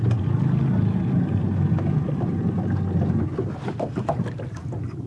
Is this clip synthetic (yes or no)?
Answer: no